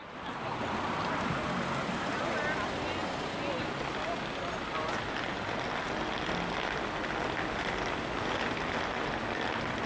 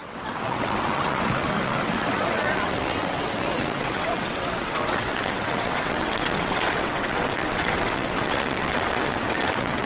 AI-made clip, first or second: second